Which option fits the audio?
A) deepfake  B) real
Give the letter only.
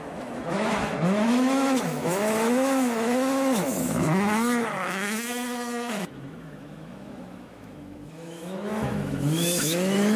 A